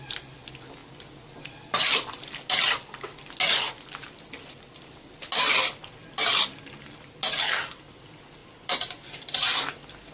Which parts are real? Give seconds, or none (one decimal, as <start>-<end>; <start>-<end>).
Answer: 0.0-8.4; 9.6-10.1